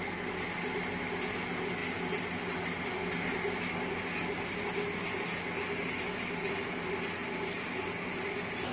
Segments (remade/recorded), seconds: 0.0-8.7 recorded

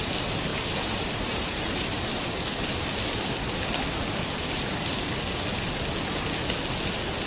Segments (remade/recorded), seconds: 0.0-0.5 recorded; 0.5-2.1 remade; 2.1-7.3 recorded

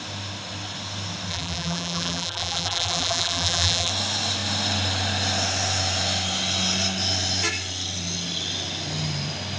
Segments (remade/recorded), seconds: 0.0-1.3 recorded; 1.3-3.9 remade; 3.9-9.6 recorded

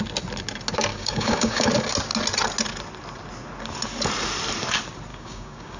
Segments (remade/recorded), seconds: 0.0-0.9 recorded; 0.9-1.7 remade; 1.7-5.1 recorded; 5.1-5.8 remade

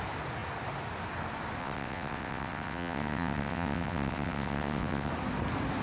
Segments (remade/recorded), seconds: 0.0-1.6 recorded; 1.6-5.1 remade; 5.1-5.8 recorded

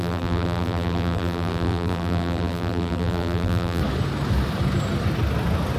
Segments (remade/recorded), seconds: 0.0-3.8 remade; 3.8-5.8 recorded

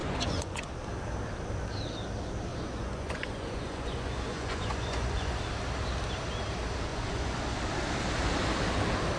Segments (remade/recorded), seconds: 0.0-0.7 remade; 0.7-2.5 recorded; 2.5-5.4 remade; 5.4-6.9 recorded; 6.9-7.4 remade; 7.4-9.2 recorded